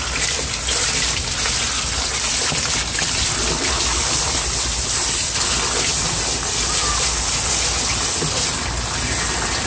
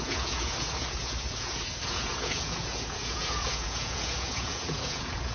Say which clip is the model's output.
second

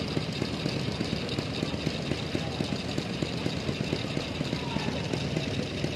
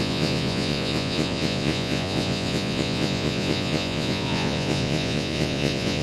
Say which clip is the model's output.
second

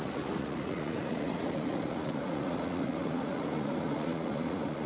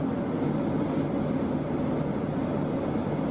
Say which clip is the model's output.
first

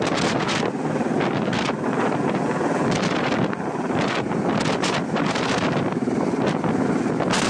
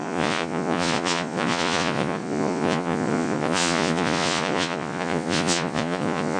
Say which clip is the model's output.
second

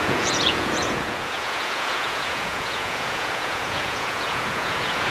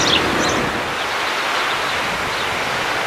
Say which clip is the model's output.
first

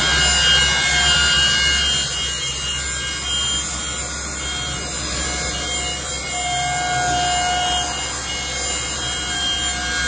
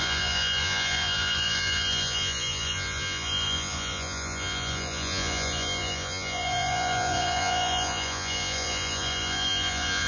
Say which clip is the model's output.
second